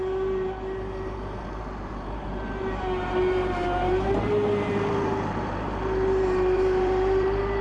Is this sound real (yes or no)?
no